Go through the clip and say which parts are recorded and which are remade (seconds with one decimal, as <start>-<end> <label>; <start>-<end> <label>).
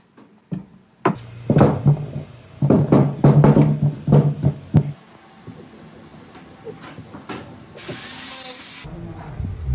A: 0.0-9.7 recorded